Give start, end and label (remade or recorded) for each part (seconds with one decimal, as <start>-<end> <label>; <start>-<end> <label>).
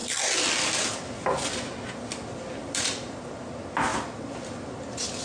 0.0-2.6 recorded; 2.6-3.5 remade; 3.5-5.2 recorded